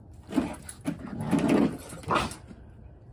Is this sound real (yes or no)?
yes